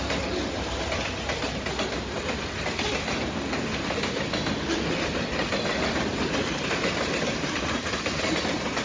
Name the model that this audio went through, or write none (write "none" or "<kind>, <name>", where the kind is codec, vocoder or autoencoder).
none